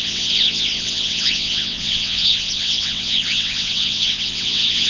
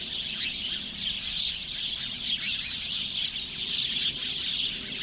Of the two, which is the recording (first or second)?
second